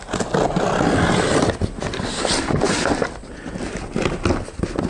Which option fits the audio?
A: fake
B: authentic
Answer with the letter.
B